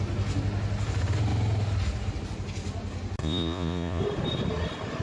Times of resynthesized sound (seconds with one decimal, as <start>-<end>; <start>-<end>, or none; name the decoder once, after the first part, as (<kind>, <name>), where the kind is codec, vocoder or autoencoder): 3.2-4.0 (vocoder, Vocos)